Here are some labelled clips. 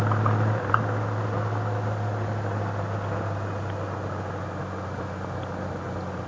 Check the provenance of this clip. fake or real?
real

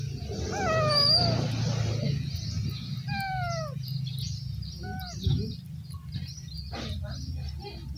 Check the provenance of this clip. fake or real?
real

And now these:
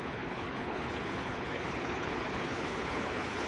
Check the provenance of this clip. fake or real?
fake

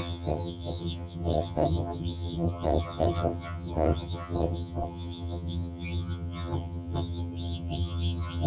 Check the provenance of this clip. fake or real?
fake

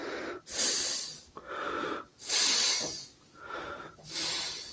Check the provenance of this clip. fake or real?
real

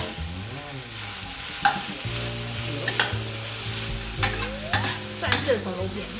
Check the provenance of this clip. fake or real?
real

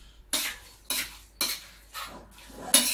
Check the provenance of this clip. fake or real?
real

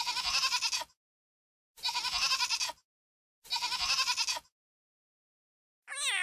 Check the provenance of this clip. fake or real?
real